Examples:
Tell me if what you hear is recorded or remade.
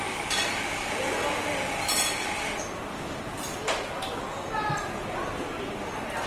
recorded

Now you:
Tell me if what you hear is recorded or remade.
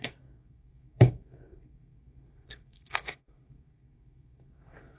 remade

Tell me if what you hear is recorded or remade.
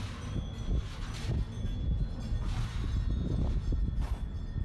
recorded